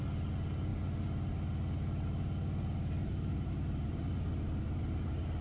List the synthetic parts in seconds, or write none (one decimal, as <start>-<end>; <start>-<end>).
none